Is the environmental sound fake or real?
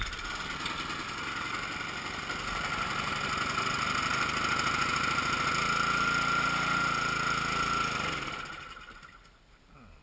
real